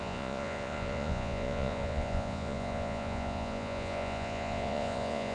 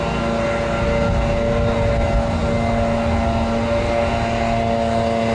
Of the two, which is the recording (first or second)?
second